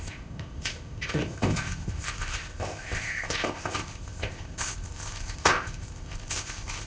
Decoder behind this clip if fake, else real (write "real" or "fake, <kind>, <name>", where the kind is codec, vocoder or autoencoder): fake, codec, ZipCodec